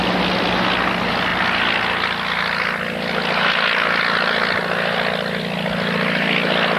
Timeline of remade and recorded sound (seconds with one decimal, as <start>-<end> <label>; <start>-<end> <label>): 0.0-6.8 recorded